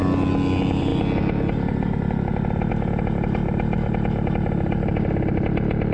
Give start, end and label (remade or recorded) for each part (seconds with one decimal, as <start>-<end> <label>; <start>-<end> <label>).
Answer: 0.0-5.9 recorded